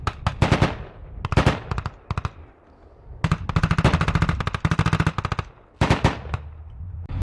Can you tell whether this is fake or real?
real